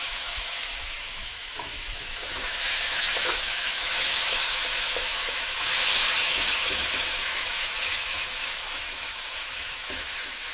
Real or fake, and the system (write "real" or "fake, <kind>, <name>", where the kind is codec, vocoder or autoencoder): fake, autoencoder, DAC-VAE